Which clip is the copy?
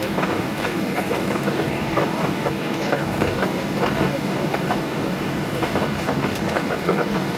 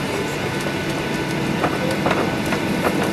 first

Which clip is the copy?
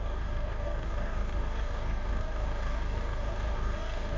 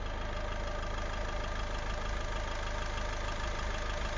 first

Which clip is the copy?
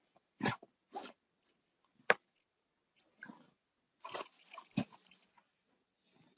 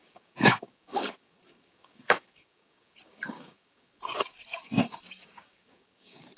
second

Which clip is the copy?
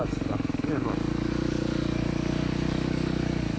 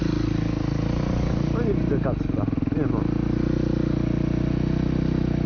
first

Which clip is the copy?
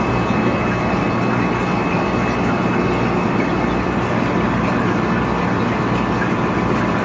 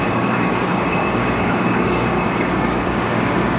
second